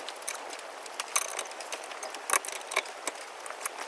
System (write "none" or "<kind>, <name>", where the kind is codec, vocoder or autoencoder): none